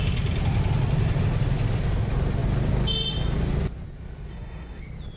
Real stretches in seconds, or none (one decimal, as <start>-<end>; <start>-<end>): 0.0-4.3; 4.8-5.2